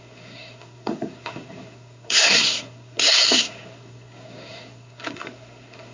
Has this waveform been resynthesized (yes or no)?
yes